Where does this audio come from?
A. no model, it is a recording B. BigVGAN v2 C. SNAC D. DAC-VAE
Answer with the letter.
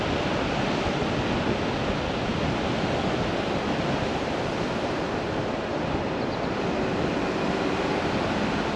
A